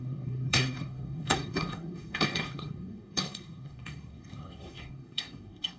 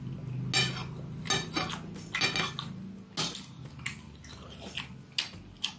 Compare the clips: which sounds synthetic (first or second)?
first